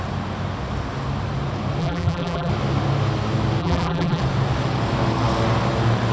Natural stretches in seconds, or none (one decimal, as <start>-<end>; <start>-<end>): 0.0-1.8; 2.5-3.6; 4.2-6.1